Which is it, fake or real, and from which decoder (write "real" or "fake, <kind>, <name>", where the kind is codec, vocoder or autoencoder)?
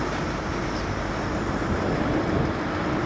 real